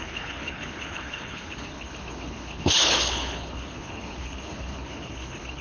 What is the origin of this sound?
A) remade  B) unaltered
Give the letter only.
A